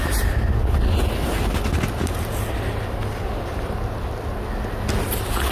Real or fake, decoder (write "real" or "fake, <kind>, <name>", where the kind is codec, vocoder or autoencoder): real